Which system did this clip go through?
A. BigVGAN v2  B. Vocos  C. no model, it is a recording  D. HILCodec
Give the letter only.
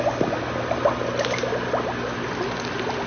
C